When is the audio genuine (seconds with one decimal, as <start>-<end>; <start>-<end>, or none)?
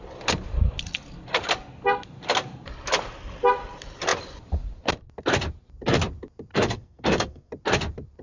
0.0-6.5; 7.5-8.2